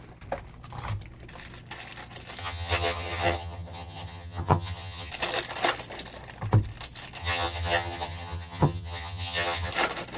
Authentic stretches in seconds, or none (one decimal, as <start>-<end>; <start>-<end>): 0.0-2.4; 5.1-7.2; 9.7-10.2